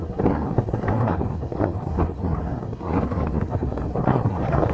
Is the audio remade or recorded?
remade